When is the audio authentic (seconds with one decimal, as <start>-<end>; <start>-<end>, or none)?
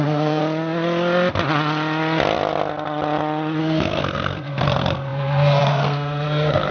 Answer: 0.4-3.6